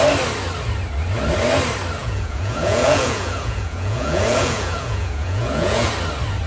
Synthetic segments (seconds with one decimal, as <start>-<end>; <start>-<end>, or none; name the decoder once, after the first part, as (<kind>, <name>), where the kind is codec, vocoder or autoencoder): 2.0-5.9 (vocoder, Vocos)